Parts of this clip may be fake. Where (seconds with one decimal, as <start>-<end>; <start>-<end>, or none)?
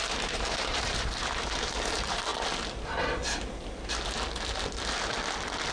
0.0-2.3